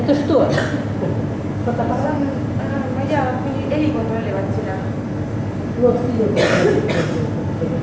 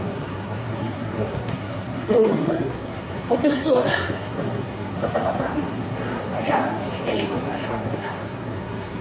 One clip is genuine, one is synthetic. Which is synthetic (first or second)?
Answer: second